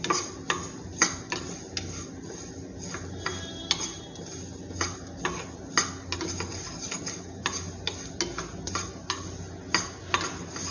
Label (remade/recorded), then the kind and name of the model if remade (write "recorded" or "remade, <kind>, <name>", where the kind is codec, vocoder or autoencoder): recorded